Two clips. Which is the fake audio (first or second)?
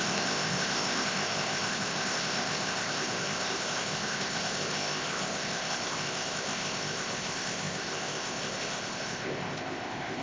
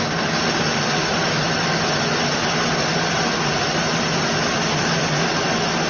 first